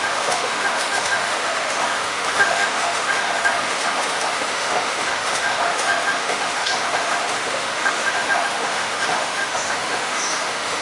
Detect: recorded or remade remade